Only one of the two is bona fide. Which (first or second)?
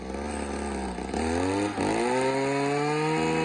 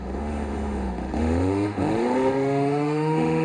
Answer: first